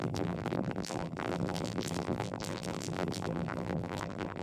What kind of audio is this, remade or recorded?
remade